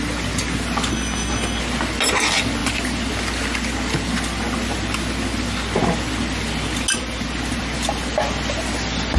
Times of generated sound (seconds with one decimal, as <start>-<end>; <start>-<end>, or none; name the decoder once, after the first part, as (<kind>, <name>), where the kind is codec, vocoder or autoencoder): 0.9-1.6 (codec, SNAC)